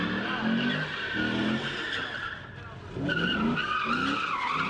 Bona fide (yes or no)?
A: yes